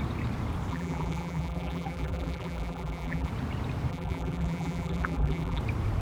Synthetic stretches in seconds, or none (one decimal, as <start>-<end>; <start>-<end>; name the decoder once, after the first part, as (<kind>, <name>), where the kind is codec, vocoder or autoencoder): 0.7-3.3 (vocoder, BigVGAN v2); 3.9-5.6